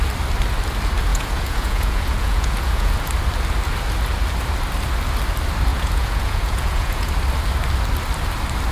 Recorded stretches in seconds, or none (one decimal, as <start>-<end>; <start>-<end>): 0.0-1.1; 3.1-5.7; 7.1-8.7